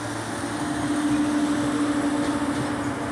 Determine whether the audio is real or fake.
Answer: real